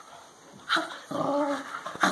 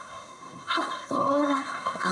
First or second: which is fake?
second